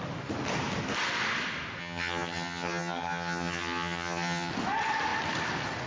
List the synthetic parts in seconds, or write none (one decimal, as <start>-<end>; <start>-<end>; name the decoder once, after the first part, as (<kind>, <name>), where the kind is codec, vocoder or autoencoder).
1.8-4.5 (vocoder, HiFi-GAN)